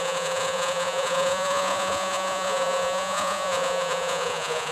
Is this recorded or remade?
remade